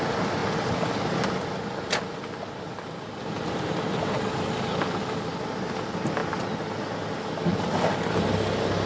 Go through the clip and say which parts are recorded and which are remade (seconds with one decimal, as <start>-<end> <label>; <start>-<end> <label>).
0.0-8.9 recorded